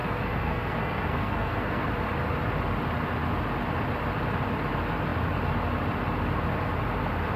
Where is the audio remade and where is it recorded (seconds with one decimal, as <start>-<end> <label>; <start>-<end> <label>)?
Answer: 0.0-1.9 remade; 1.9-7.4 recorded